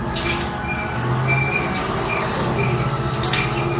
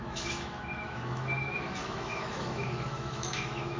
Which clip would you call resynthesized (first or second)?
second